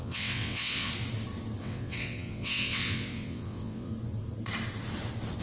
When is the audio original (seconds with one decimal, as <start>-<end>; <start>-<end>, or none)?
0.9-1.6; 3.9-5.4

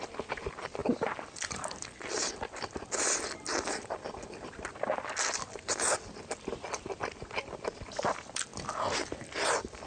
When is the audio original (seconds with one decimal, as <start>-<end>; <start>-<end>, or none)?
8.5-9.2

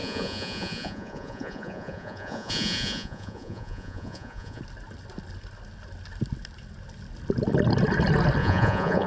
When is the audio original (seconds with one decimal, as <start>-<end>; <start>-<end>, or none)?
4.6-8.4

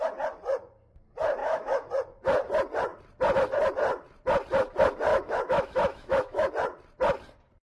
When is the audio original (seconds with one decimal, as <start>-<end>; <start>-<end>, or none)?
0.0-1.4; 1.9-5.1; 6.5-7.7

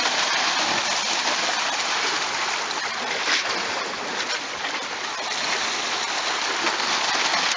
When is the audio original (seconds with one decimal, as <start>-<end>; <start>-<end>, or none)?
0.0-7.6

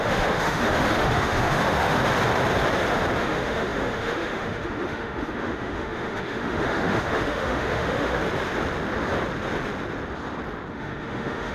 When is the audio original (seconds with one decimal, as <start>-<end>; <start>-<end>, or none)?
2.1-3.2; 8.2-10.7